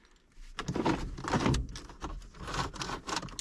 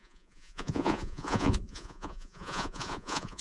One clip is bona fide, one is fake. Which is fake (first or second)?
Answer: second